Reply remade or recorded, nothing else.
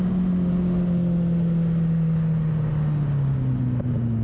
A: recorded